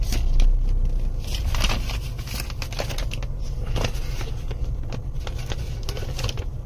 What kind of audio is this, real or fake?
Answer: real